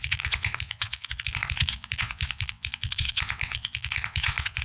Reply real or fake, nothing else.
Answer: fake